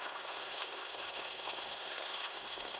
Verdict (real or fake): fake